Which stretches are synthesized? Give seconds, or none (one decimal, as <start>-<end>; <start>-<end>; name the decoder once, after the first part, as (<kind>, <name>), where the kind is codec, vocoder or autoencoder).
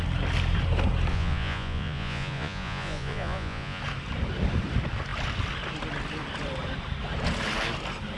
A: 1.1-3.8 (vocoder, Vocos)